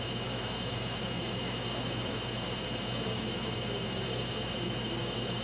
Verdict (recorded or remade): remade